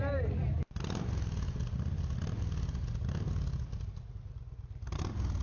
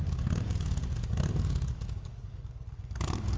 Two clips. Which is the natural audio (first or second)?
first